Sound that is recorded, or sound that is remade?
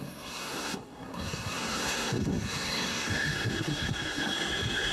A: remade